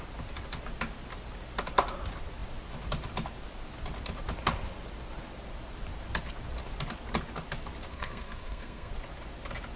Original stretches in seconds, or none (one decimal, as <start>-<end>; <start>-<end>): 0.0-7.9; 8.9-9.8